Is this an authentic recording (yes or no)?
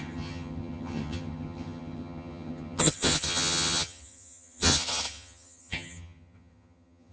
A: no